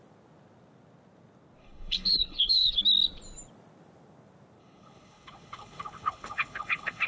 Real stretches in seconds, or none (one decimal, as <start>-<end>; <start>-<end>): 0.0-1.6; 2.8-4.6